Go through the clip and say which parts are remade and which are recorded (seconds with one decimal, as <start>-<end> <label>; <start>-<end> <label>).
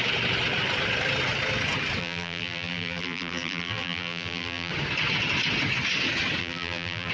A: 0.0-2.0 recorded; 2.0-4.7 remade; 4.7-6.4 recorded; 6.4-7.1 remade